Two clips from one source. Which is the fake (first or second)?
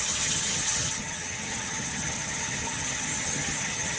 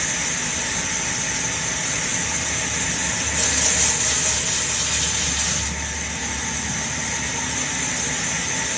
first